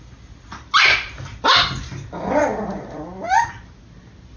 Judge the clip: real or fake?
real